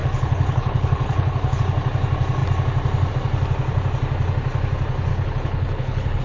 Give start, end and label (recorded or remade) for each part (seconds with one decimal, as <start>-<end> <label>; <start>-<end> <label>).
0.0-1.6 remade; 1.6-5.1 recorded; 5.1-6.2 remade